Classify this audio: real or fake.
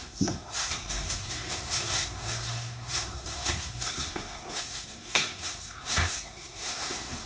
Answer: fake